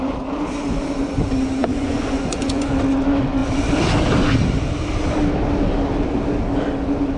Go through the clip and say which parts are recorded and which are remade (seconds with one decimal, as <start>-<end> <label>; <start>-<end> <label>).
0.0-1.6 recorded; 1.6-2.7 remade; 2.7-7.2 recorded